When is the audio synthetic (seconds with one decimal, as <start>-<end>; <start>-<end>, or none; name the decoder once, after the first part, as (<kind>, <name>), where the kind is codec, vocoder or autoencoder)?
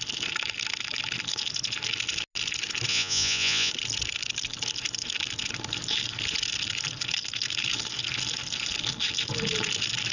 2.9-3.7 (vocoder, Vocos)